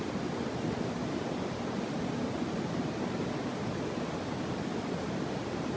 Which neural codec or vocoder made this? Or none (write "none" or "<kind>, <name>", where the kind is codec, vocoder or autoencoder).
none